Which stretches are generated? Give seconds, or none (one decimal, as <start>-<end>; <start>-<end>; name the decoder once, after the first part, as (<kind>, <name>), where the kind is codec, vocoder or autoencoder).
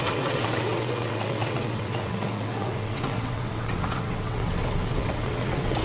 0.0-5.8 (vocoder, WaveNeXt)